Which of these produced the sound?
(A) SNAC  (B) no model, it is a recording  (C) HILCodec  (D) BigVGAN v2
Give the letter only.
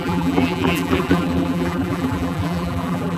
D